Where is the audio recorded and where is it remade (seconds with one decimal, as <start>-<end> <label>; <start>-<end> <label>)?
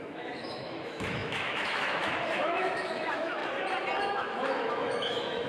0.0-3.4 remade; 3.4-4.1 recorded; 4.1-5.5 remade